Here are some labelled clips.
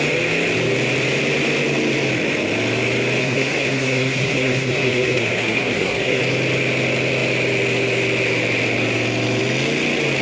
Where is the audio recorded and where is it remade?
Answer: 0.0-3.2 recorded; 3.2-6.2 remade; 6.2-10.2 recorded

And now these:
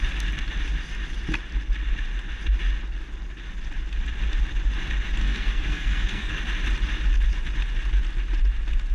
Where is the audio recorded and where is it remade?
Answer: 0.0-5.2 recorded; 5.2-6.4 remade; 6.4-8.9 recorded

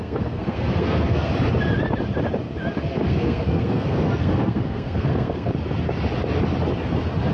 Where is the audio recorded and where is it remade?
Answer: 0.0-1.3 remade; 1.3-2.8 recorded; 2.8-5.5 remade; 5.5-7.3 recorded